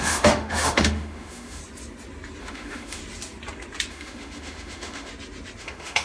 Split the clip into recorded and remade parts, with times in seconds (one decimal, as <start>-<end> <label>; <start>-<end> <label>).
0.0-1.6 remade; 1.6-2.4 recorded; 2.4-3.0 remade; 3.0-3.9 recorded; 3.9-5.1 remade; 5.1-5.6 recorded; 5.6-6.0 remade